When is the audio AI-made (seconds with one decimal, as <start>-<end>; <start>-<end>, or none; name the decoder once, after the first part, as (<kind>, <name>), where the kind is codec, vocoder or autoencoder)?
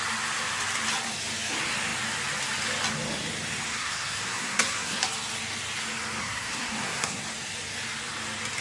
3.7-5.0 (codec, SNAC); 6.2-7.2